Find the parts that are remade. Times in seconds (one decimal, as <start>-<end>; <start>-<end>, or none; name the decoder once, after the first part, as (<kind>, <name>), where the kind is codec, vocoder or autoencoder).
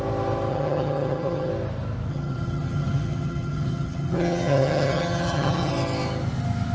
0.5-1.5 (vocoder, HiFi-GAN); 2.1-5.7